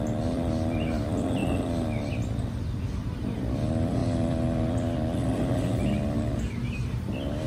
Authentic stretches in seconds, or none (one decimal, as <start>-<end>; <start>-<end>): 0.0-7.5